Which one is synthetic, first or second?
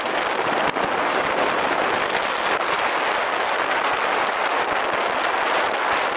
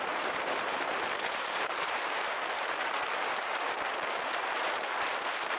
second